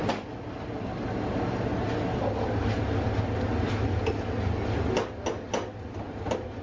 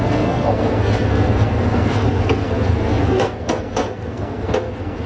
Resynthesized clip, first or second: second